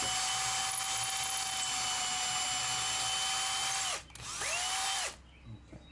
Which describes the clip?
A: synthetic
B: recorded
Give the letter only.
B